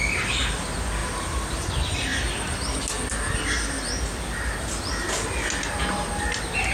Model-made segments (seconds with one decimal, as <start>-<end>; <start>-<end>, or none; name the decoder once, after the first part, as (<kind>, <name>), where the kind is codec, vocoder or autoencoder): 1.0-1.7 (vocoder, BigVGAN v2)